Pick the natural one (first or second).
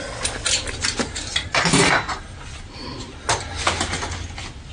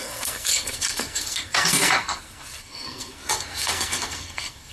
first